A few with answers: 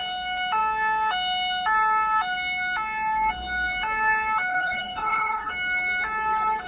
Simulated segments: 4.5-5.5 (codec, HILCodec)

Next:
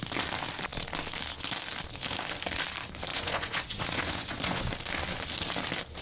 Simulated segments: 3.1-4.7 (vocoder, Vocos)

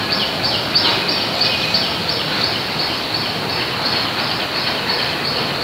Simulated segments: none

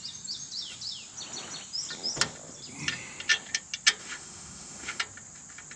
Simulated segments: 4.0-5.0 (autoencoder, DAC-VAE)